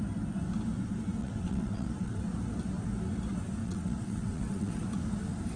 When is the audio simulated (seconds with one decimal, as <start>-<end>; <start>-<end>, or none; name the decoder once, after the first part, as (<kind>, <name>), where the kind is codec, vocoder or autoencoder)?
1.2-2.2 (vocoder, WaveNeXt); 3.6-4.8